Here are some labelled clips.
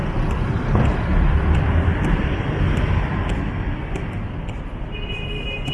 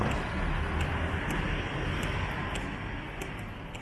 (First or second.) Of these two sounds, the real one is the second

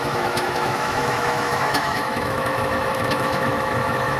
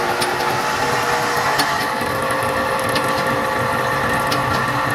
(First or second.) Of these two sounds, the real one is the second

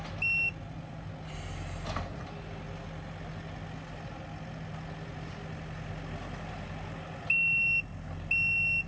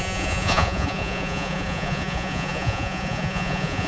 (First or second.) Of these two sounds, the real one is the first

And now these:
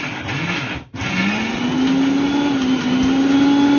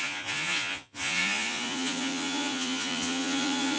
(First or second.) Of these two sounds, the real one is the first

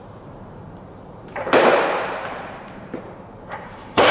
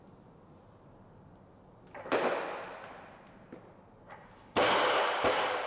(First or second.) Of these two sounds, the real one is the second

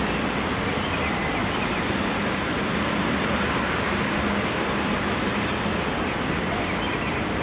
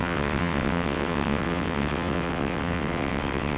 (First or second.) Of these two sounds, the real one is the first